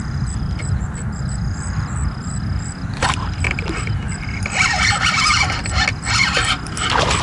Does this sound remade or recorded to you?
recorded